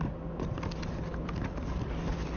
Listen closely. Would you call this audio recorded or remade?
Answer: recorded